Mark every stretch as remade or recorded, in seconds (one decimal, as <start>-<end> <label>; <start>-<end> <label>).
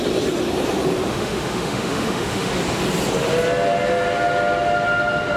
0.0-1.1 recorded; 1.1-2.5 remade; 2.5-5.4 recorded